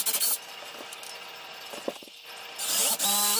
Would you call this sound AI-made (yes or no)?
no